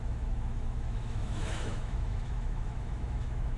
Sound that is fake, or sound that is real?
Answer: fake